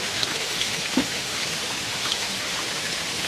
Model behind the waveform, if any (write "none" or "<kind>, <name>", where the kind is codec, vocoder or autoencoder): autoencoder, DAC-VAE